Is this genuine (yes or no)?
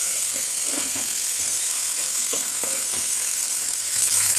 no